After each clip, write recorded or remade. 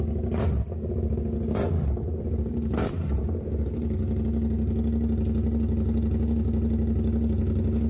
recorded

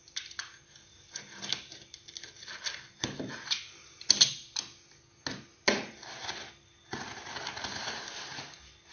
recorded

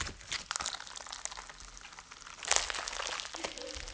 recorded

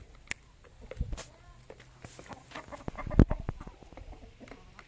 recorded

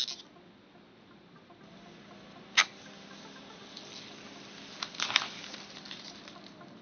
recorded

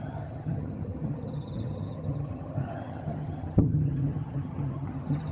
remade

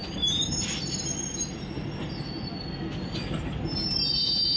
recorded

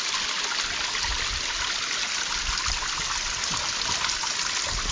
recorded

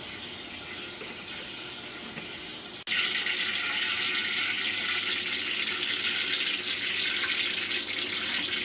recorded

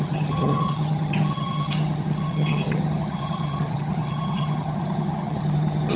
remade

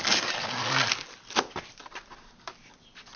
recorded